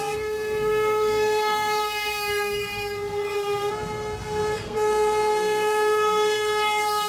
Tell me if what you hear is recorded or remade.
remade